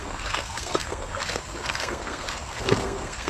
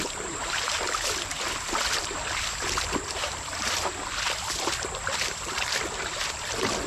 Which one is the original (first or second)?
second